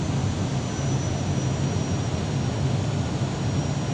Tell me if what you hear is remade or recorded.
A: recorded